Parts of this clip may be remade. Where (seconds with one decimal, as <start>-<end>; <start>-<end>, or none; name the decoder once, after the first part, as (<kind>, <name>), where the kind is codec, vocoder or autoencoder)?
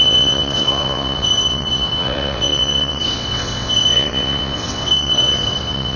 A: 0.0-6.0 (vocoder, WaveNeXt)